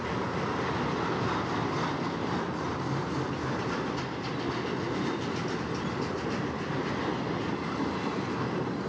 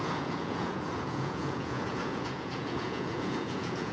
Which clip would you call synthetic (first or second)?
second